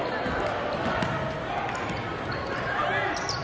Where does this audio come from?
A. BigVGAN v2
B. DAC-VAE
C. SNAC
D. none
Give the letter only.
D